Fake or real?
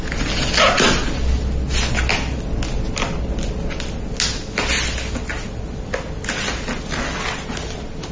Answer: real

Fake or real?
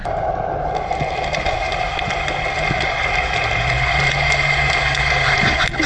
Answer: real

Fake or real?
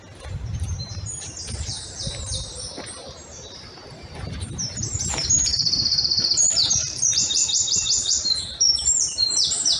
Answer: fake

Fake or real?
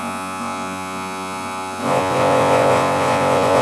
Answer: fake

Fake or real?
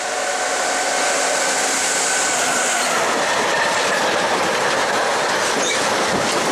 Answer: real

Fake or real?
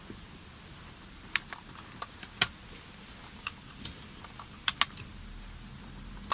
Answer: real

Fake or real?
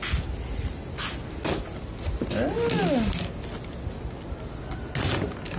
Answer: real